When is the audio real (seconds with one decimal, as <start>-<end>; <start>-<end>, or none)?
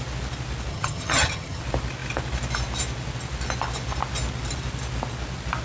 0.0-0.7; 1.6-5.6